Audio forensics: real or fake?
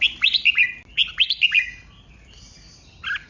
real